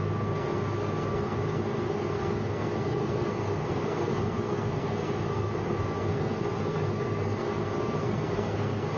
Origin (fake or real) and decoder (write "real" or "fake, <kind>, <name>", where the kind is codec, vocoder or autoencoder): fake, codec, SNAC